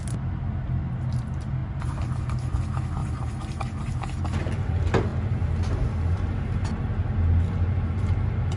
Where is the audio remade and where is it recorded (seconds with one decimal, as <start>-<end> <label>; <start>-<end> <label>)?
0.0-3.0 recorded; 3.0-3.6 remade; 3.6-8.6 recorded

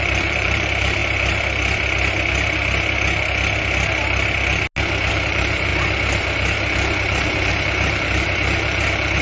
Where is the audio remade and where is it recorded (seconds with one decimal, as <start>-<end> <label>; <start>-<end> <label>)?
0.0-1.0 remade; 1.0-5.1 recorded; 5.1-5.7 remade; 5.7-7.5 recorded; 7.5-9.2 remade

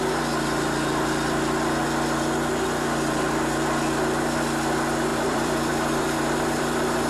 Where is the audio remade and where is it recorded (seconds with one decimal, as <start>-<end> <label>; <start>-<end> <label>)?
0.0-5.1 recorded; 5.1-7.1 remade

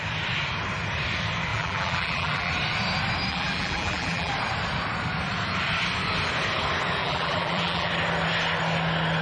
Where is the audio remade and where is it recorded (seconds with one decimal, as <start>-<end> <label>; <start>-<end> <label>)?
0.0-1.5 recorded; 1.5-2.5 remade; 2.5-3.3 recorded; 3.3-4.3 remade; 4.3-7.0 recorded; 7.0-7.9 remade; 7.9-9.2 recorded

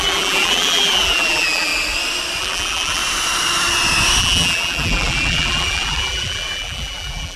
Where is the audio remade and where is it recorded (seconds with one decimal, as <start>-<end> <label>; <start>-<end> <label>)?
0.0-1.7 remade; 1.7-2.4 recorded; 2.4-3.0 remade; 3.0-4.2 recorded; 4.2-7.4 remade

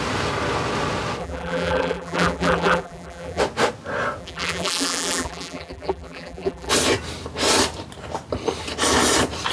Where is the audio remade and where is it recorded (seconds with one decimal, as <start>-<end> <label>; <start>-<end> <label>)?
0.0-1.2 recorded; 1.2-3.4 remade; 3.4-4.2 recorded; 4.2-6.7 remade; 6.7-9.5 recorded

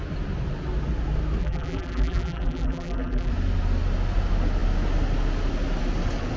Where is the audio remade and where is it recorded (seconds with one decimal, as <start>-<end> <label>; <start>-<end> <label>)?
0.0-1.4 recorded; 1.4-3.3 remade; 3.3-6.4 recorded

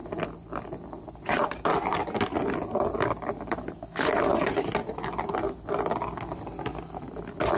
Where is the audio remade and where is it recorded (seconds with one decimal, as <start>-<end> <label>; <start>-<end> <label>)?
0.0-7.6 recorded